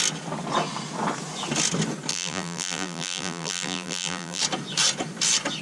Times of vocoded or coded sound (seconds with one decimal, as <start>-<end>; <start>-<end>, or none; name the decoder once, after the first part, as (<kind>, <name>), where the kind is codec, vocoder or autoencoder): 2.1-4.4 (vocoder, BigVGAN v2)